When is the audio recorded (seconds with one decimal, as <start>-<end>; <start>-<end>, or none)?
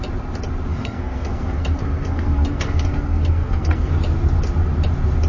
0.0-0.7; 3.9-5.3